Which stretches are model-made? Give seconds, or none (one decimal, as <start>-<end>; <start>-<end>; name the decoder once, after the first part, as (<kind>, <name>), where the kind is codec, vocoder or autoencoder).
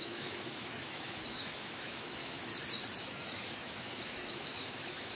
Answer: 0.0-2.5 (autoencoder, DAC-VAE); 3.0-5.1